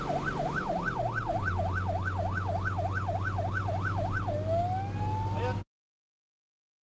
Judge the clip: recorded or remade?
recorded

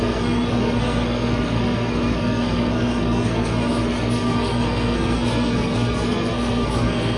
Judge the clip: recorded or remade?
remade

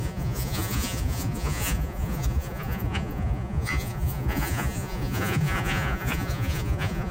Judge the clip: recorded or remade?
remade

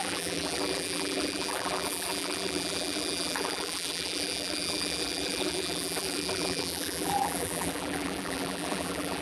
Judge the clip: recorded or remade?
remade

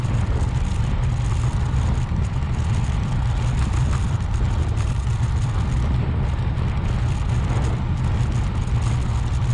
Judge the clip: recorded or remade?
recorded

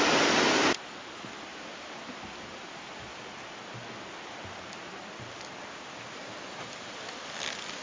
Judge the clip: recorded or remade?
recorded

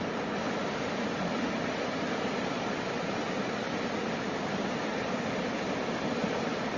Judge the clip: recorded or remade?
recorded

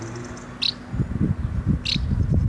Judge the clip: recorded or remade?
recorded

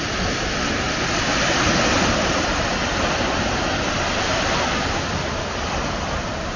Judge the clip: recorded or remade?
recorded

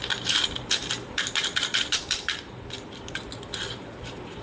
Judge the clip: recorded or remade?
remade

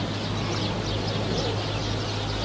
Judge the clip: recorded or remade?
recorded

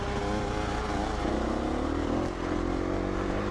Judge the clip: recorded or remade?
recorded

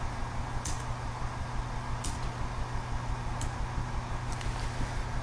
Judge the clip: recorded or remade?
recorded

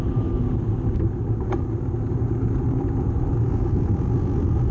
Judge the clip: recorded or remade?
recorded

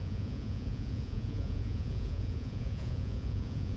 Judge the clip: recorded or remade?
remade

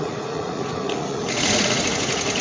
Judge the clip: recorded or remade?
remade